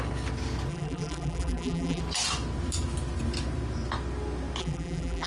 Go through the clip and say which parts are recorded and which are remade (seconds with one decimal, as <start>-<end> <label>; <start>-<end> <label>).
0.0-0.7 recorded; 0.7-2.0 remade; 2.0-4.6 recorded; 4.6-5.3 remade